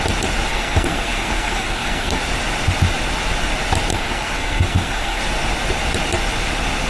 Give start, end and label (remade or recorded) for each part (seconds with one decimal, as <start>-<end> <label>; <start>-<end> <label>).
0.0-0.5 recorded; 0.5-2.2 remade; 2.2-3.9 recorded; 3.9-5.2 remade; 5.2-6.9 recorded